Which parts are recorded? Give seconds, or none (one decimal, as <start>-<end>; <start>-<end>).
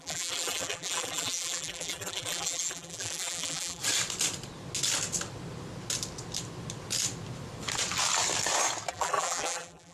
3.8-8.9